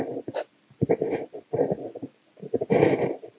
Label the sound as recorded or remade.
recorded